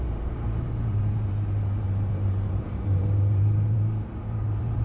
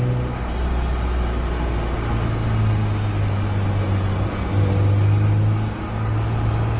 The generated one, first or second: first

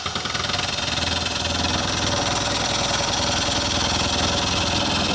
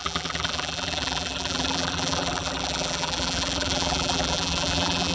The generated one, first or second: second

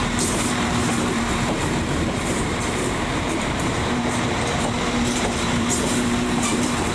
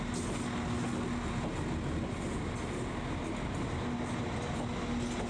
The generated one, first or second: first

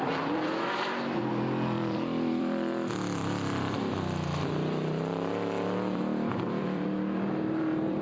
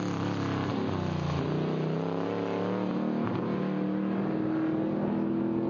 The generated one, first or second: first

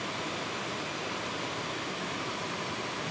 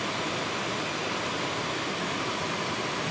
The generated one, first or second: first